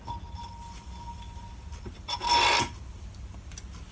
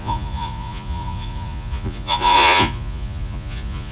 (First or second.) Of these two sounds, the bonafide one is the first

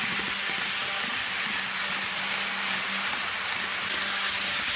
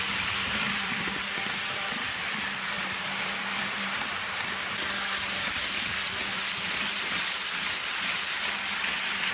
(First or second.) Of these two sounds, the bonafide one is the first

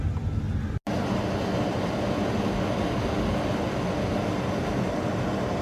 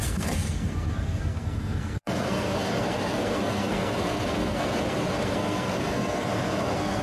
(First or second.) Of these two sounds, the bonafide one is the first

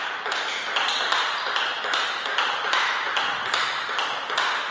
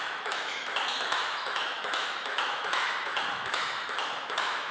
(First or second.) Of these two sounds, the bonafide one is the first